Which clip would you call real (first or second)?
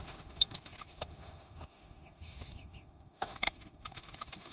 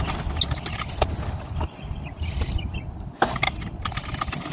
second